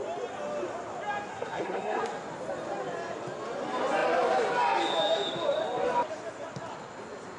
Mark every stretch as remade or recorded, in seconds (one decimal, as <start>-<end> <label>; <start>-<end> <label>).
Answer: 0.0-1.3 recorded; 1.3-2.0 remade; 2.0-7.4 recorded